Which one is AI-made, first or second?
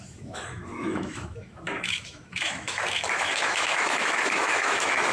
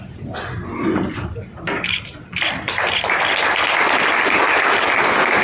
first